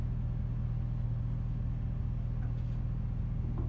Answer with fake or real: real